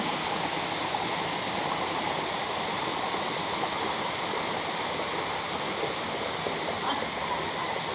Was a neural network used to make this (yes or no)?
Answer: no